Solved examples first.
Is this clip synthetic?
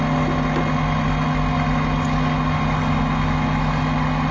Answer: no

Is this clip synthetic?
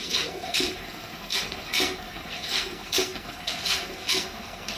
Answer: yes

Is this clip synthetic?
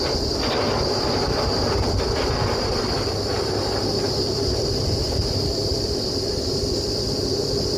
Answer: no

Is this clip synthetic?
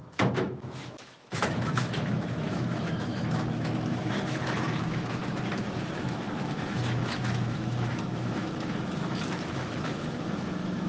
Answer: yes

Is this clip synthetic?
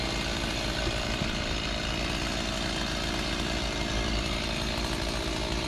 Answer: no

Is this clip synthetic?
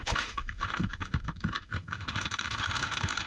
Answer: yes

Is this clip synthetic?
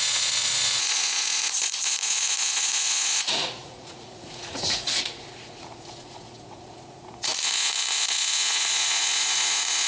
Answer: yes